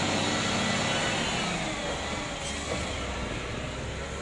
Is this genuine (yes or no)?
yes